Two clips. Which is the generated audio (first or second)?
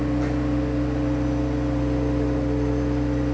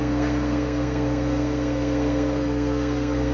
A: second